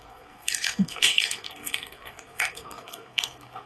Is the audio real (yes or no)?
no